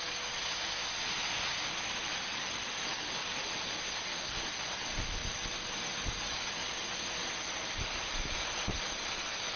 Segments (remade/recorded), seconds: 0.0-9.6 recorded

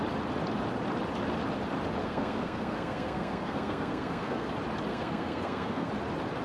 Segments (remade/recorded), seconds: 0.0-2.0 recorded; 2.0-4.5 remade; 4.5-4.9 recorded; 4.9-5.9 remade; 5.9-6.4 recorded

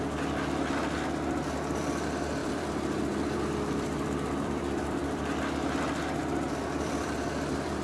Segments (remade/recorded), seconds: 0.0-2.4 recorded; 2.4-5.4 remade; 5.4-6.2 recorded; 6.2-7.8 remade

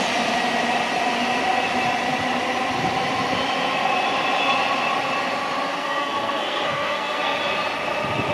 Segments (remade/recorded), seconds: 0.0-5.7 recorded; 5.7-7.4 remade; 7.4-8.3 recorded

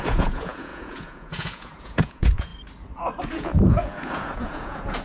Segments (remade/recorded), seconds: 0.0-2.5 remade; 2.5-3.2 recorded; 3.2-5.0 remade